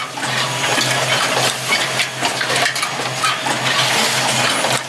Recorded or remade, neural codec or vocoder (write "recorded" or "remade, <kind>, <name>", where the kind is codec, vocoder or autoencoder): recorded